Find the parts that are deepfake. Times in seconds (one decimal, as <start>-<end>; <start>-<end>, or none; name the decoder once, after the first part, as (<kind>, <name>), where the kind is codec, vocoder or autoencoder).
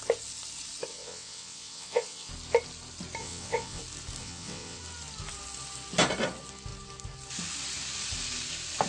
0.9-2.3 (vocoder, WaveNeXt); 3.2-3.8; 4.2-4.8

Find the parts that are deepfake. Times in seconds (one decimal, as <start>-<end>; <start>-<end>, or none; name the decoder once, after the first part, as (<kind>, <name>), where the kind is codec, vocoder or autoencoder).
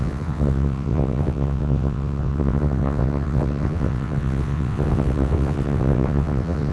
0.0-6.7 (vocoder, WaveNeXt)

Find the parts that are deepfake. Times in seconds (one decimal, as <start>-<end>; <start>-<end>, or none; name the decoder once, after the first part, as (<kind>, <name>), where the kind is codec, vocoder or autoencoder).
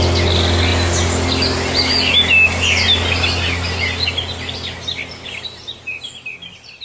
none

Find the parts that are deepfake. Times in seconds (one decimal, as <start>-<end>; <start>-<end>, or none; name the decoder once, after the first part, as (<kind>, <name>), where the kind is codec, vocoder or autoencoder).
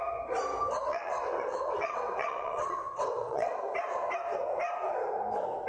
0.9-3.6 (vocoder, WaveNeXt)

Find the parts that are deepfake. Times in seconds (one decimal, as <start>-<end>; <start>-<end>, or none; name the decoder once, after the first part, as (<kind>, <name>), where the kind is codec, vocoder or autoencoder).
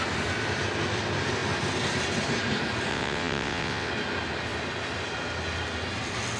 2.9-3.9 (vocoder, WaveNeXt)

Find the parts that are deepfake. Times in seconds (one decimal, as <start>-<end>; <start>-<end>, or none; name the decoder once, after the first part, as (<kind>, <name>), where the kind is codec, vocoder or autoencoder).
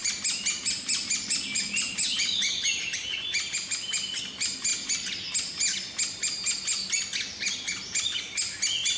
none